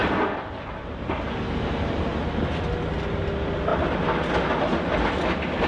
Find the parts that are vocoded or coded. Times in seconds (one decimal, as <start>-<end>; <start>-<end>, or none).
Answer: 0.0-0.9